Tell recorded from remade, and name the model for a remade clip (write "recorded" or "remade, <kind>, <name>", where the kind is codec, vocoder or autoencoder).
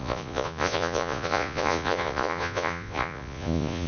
remade, vocoder, Vocos